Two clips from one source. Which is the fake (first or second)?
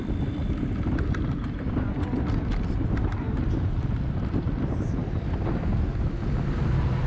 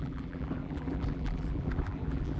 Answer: second